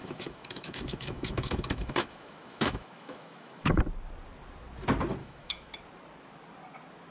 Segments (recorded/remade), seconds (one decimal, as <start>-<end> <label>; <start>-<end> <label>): 0.0-3.8 remade; 3.8-5.2 recorded; 5.2-5.7 remade; 5.7-7.1 recorded